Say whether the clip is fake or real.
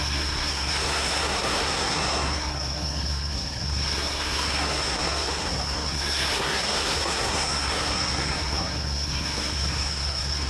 fake